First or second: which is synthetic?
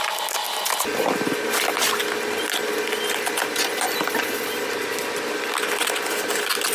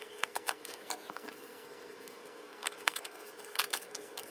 second